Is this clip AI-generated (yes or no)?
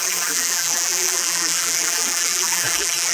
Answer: yes